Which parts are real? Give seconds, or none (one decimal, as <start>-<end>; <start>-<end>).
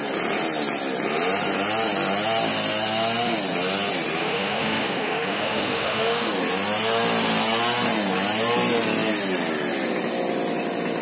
0.0-4.2; 6.3-11.0